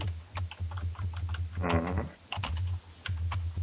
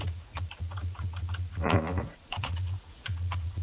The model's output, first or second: second